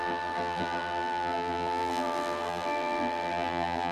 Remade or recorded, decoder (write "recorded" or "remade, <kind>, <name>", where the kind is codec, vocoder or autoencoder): remade, vocoder, BigVGAN v2